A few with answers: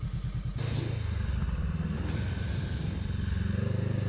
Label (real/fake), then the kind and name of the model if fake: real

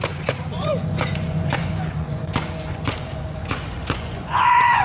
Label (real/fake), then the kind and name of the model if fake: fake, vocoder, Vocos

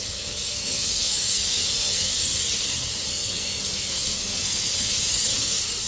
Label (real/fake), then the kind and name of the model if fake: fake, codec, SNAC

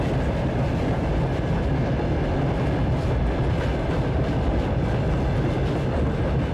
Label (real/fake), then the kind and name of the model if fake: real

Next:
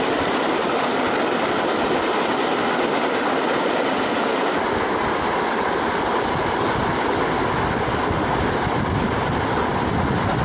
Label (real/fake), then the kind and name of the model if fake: real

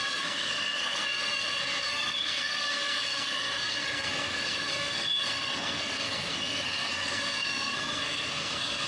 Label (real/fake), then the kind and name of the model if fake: fake, codec, SNAC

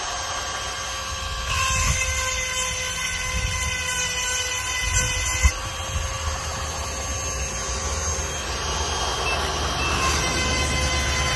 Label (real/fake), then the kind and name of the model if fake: real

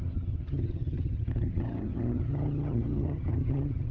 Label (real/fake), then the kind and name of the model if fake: fake, vocoder, HiFi-GAN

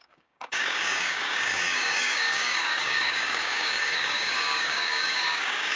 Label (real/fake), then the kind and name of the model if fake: fake, codec, DAC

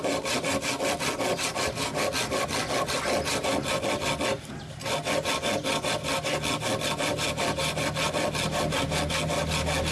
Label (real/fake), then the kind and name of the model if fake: real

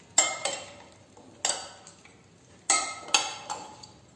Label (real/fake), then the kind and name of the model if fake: real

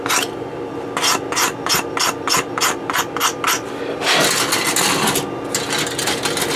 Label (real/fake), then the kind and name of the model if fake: real